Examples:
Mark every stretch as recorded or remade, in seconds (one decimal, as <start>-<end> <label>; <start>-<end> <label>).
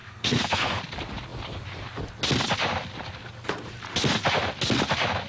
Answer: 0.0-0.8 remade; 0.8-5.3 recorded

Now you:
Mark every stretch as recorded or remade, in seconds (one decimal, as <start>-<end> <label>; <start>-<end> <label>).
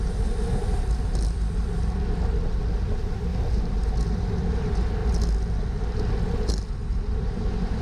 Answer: 0.0-3.3 recorded; 3.3-3.9 remade; 3.9-6.8 recorded; 6.8-7.8 remade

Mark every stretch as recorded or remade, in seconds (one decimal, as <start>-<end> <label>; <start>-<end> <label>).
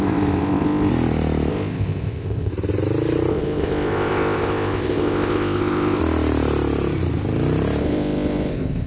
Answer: 0.0-0.9 remade; 0.9-1.5 recorded; 1.5-2.5 remade; 2.5-3.3 recorded; 3.3-6.0 remade; 6.0-7.8 recorded; 7.8-8.9 remade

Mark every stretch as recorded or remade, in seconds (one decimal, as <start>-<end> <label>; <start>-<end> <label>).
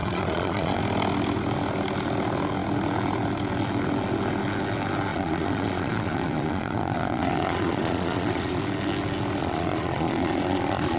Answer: 0.0-0.8 remade; 0.8-5.1 recorded; 5.1-8.6 remade; 8.6-9.4 recorded; 9.4-11.0 remade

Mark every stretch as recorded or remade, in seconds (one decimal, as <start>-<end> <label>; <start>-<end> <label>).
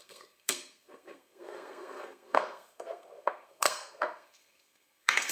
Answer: 0.0-5.3 remade